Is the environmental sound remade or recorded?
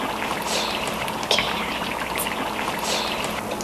recorded